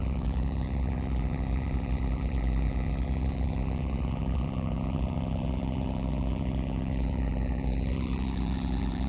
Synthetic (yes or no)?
yes